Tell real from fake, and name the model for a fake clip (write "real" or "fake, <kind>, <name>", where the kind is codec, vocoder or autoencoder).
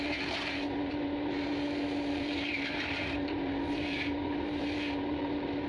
fake, vocoder, BigVGAN v2